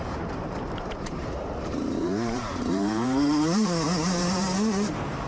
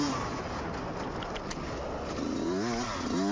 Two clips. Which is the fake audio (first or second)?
first